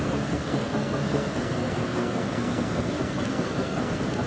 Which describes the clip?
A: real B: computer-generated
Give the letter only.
B